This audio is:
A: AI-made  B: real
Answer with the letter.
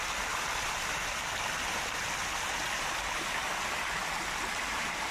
B